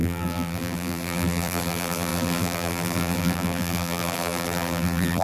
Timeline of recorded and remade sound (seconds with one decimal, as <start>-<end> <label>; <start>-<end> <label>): 0.0-5.2 remade